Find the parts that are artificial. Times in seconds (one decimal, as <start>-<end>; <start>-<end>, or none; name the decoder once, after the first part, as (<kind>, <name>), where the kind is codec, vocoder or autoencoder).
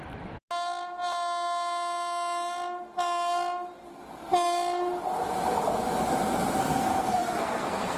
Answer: 6.6-8.0 (codec, SNAC)